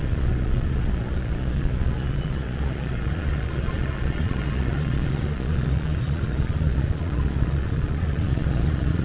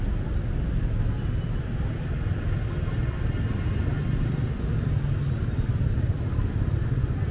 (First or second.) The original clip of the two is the second